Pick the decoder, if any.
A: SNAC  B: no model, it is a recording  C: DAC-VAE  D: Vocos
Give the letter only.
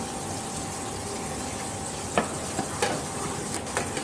B